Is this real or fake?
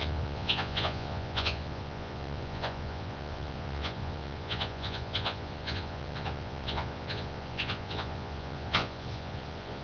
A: fake